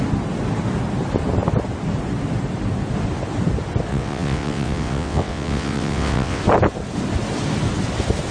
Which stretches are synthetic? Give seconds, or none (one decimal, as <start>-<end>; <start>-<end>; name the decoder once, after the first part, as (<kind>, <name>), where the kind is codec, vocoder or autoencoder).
3.9-6.4 (vocoder, WaveNeXt)